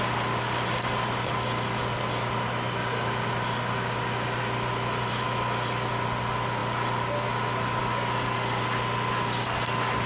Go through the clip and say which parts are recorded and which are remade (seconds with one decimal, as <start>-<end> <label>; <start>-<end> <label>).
0.0-10.1 recorded